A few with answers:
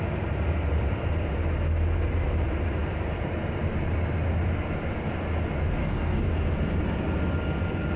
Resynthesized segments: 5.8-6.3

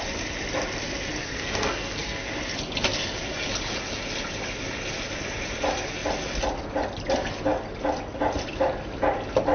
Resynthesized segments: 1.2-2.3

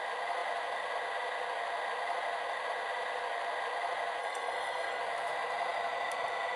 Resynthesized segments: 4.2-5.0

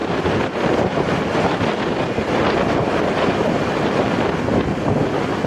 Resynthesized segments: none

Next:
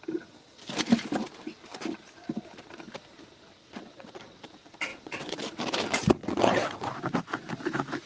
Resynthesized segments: 3.6-4.2; 4.9-5.4; 6.2-6.9

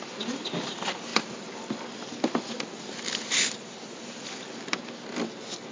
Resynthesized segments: none

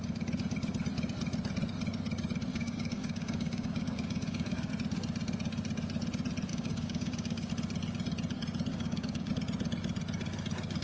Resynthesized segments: 2.5-4.7; 6.5-7.5; 8.7-9.3

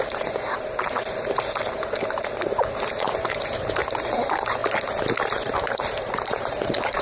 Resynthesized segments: 0.0-4.6; 5.5-7.0